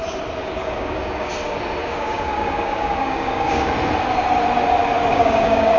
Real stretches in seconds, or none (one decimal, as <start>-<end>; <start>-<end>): 0.0-0.4; 1.3-1.8; 3.7-5.1